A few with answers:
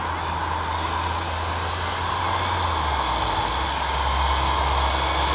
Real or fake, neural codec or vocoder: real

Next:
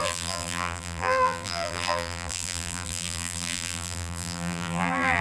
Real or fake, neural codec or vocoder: fake, vocoder, BigVGAN v2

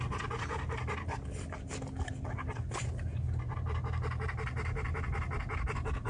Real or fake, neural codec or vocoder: real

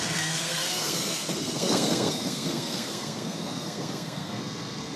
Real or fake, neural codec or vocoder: fake, codec, SNAC